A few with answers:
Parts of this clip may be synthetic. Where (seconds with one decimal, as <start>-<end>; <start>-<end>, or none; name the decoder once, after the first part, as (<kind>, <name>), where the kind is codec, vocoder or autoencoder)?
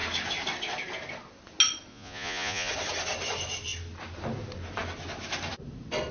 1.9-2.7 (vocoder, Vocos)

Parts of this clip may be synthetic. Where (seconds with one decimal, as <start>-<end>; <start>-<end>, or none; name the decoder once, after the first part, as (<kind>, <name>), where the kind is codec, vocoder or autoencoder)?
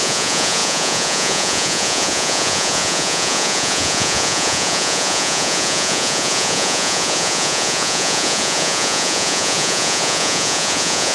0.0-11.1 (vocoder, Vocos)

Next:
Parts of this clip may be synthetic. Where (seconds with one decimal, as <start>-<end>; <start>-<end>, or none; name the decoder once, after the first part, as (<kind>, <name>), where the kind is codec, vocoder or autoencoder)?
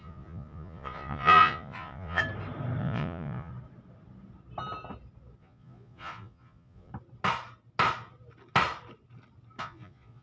0.0-2.2 (vocoder, Vocos); 2.8-3.5; 5.4-6.9; 9.6-10.2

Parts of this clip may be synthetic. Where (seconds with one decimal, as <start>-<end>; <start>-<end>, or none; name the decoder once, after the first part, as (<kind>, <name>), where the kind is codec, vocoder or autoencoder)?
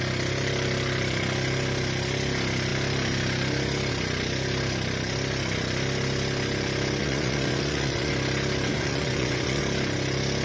7.0-8.1 (vocoder, Vocos); 8.7-9.6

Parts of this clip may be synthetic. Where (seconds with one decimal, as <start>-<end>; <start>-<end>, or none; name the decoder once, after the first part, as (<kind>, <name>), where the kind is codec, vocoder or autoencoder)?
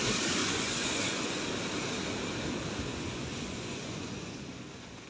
0.4-1.4 (vocoder, Vocos); 2.9-5.1